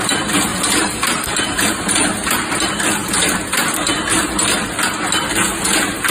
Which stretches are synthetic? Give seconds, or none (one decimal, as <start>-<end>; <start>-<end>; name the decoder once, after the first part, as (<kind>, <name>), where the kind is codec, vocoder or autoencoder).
0.5-1.9 (vocoder, BigVGAN v2)